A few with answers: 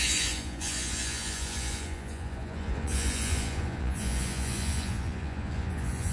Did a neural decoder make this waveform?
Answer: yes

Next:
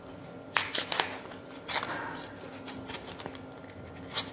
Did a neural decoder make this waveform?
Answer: no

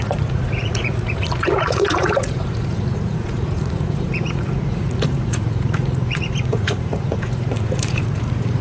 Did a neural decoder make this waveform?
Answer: yes